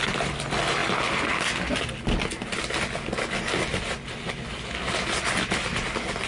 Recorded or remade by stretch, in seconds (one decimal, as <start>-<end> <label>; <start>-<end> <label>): 0.0-6.3 recorded